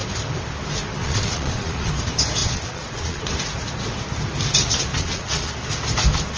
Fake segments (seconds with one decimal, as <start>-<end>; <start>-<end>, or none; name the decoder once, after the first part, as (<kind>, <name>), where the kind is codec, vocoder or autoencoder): 1.0-1.9 (vocoder, Vocos); 2.4-3.2; 4.9-5.5